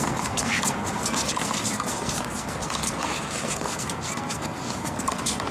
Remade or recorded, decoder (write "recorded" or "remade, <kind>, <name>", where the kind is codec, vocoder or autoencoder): remade, codec, SNAC